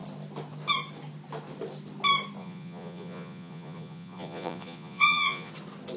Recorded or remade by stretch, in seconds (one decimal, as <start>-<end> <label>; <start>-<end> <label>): 0.0-2.4 recorded; 2.4-5.5 remade; 5.5-6.0 recorded

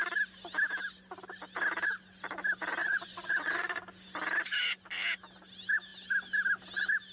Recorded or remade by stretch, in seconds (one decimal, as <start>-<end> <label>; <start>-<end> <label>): 0.0-2.8 recorded; 2.8-3.8 remade; 3.8-7.1 recorded